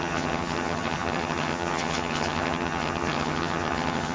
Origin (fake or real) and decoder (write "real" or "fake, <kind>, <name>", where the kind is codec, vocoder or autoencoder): fake, vocoder, HiFi-GAN